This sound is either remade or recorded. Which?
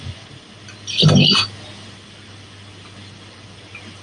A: recorded